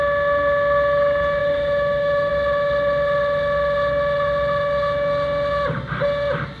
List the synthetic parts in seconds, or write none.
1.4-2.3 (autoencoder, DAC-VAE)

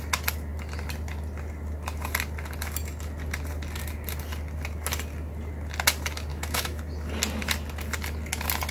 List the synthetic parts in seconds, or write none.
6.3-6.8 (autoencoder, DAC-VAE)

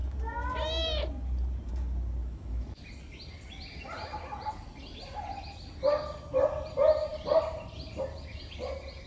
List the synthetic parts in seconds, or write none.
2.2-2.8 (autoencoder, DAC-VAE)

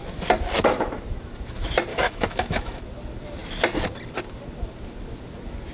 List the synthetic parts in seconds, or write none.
1.9-2.8 (autoencoder, DAC-VAE)

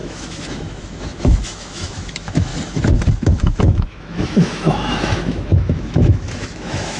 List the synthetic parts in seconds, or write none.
0.0-2.5 (autoencoder, DAC-VAE); 3.2-7.0